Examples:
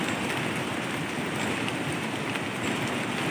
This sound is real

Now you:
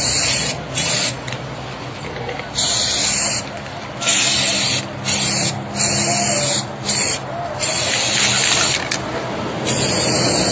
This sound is real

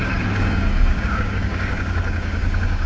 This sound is fake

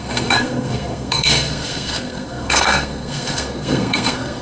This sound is fake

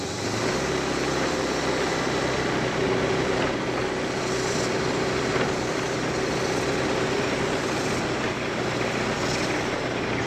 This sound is real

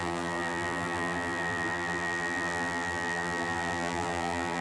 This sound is fake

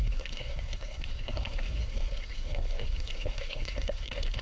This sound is fake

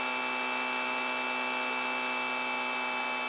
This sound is real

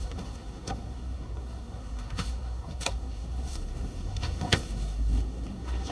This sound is fake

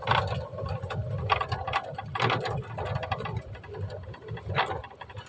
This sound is real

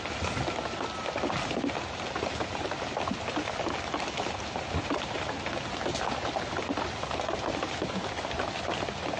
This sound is real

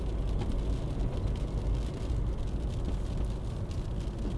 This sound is real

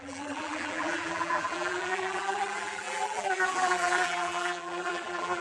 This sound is fake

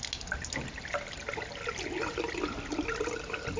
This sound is real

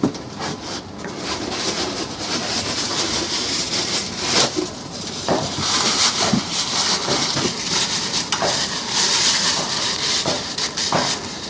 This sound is fake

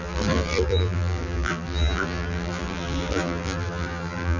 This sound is fake